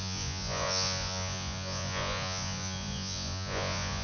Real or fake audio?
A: fake